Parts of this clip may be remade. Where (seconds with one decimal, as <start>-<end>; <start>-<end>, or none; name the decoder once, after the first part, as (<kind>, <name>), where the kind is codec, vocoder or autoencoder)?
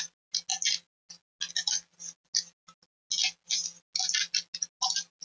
none